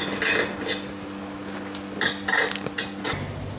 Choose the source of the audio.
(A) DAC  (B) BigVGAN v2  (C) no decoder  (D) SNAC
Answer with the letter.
C